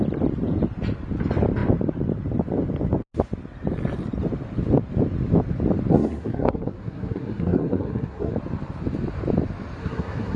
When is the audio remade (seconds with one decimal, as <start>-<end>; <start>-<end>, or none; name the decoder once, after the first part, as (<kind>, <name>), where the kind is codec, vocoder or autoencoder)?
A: 5.9-8.3 (codec, SNAC); 9.8-10.4